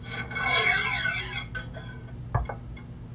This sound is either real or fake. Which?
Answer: real